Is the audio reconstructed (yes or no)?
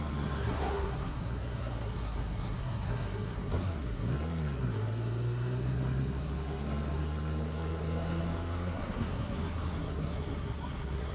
yes